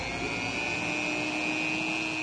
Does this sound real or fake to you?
real